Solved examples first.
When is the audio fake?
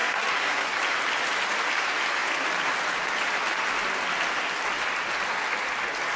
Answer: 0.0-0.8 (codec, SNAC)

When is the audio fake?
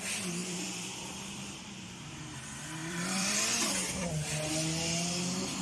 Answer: 0.4-1.9 (vocoder, BigVGAN v2); 2.8-3.4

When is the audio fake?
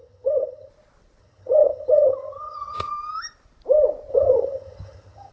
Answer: 0.0-0.7 (vocoder, HiFi-GAN); 1.2-2.9; 4.1-5.3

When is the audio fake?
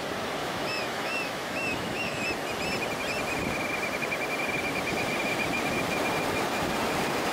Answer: 0.4-2.2 (autoencoder, DAC-VAE)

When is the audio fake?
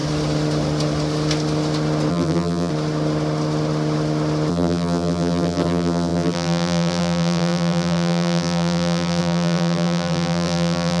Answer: 2.1-2.7 (vocoder, BigVGAN v2); 4.5-11.0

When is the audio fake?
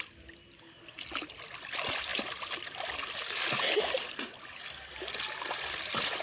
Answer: none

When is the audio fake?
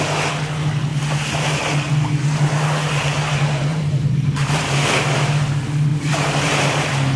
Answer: 3.7-4.9 (vocoder, BigVGAN v2); 5.9-7.2